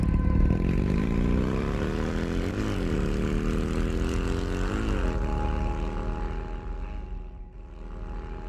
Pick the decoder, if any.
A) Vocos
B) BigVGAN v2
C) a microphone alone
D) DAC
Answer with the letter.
C